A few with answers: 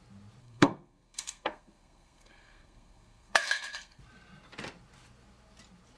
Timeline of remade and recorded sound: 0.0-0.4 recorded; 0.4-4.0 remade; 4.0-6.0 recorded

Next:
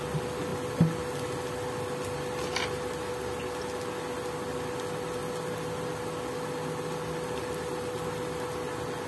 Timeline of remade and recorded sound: 0.0-9.1 recorded

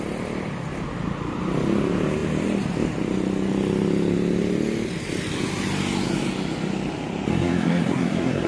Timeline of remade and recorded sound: 0.0-7.3 recorded; 7.3-8.5 remade

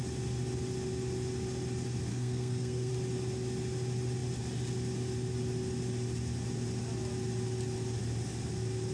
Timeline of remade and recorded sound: 0.0-2.1 recorded; 2.1-2.9 remade; 2.9-8.9 recorded